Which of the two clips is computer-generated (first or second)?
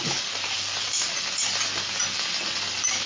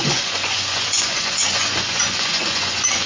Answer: second